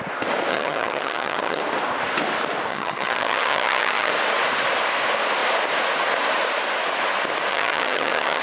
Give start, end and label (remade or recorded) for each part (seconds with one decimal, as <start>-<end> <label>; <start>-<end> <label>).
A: 0.0-0.5 recorded; 0.5-1.6 remade; 1.6-2.7 recorded; 2.7-4.1 remade; 4.1-7.5 recorded; 7.5-8.4 remade